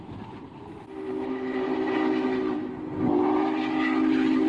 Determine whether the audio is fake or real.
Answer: real